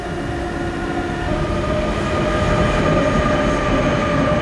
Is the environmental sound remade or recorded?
recorded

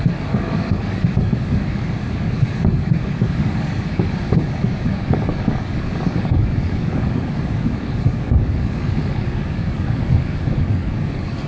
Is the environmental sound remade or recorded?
remade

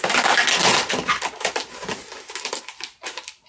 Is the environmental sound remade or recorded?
recorded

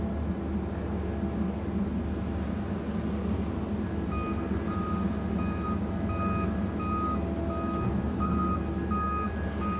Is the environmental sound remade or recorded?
recorded